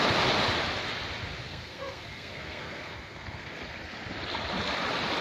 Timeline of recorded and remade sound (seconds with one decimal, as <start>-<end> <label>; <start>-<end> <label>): 0.0-1.5 recorded; 1.5-3.6 remade; 3.6-5.2 recorded